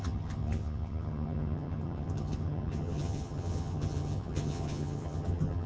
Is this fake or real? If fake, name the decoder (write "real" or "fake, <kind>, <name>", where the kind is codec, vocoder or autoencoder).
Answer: fake, vocoder, HiFi-GAN